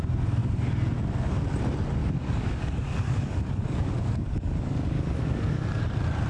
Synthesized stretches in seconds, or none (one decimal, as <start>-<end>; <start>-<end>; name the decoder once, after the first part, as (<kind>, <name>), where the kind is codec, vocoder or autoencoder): 2.0-5.8 (codec, DAC)